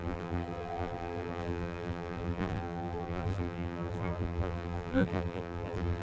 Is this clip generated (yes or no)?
yes